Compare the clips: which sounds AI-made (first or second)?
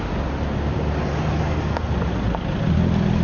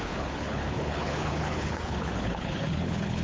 second